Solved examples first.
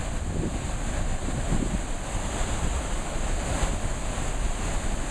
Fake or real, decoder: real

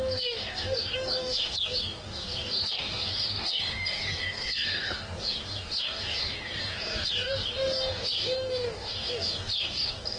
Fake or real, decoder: fake, codec, DAC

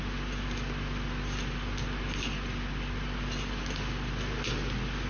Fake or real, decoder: real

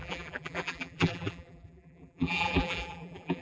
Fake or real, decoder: fake, vocoder, BigVGAN v2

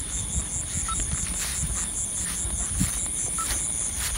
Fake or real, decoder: real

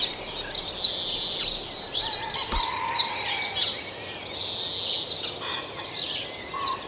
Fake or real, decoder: real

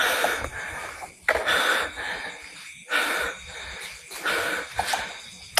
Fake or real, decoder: real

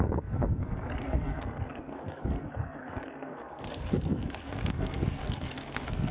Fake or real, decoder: fake, codec, SNAC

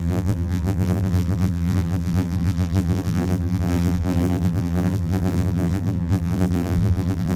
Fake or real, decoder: fake, vocoder, BigVGAN v2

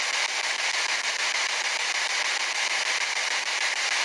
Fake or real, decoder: real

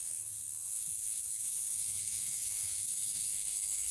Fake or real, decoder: fake, autoencoder, DAC-VAE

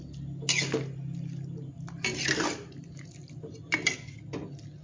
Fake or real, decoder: real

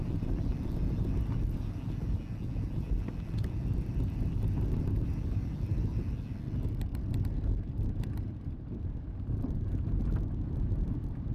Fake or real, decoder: real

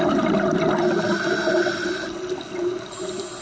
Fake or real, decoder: real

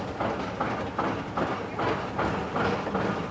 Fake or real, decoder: real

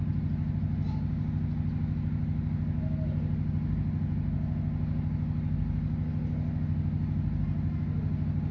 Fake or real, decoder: real